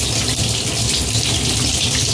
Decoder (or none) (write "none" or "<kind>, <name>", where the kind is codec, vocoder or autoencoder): none